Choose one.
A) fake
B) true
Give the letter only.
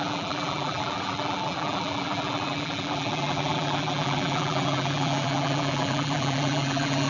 A